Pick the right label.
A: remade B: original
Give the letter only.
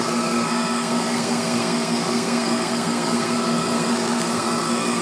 A